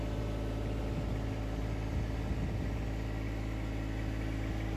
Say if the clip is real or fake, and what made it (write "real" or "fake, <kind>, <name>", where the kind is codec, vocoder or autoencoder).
real